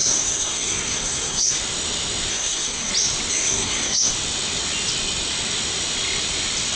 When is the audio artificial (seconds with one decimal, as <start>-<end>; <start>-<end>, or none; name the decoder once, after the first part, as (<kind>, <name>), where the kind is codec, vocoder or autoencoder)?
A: 0.0-1.5 (codec, SNAC); 2.3-2.9; 3.3-4.1